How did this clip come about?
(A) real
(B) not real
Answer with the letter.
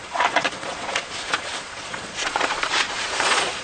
B